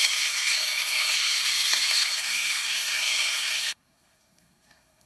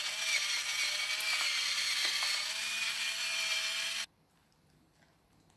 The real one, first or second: second